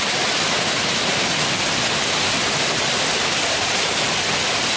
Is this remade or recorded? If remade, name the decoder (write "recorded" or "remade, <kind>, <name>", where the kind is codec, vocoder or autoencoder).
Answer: recorded